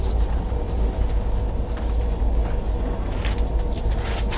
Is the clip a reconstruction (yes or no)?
no